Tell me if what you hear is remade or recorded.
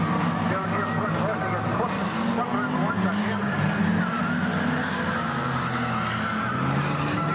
recorded